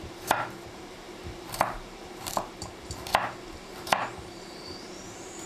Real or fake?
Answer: fake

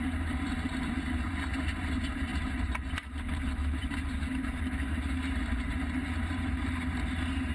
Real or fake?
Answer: fake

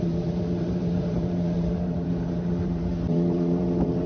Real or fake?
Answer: fake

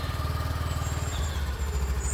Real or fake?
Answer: fake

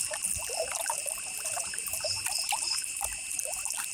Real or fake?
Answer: fake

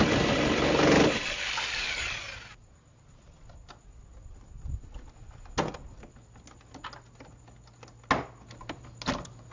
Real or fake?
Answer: real